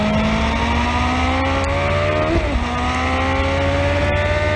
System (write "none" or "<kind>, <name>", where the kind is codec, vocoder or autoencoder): none